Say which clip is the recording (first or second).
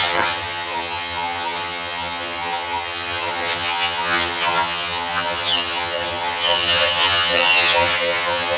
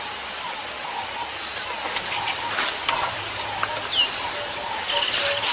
second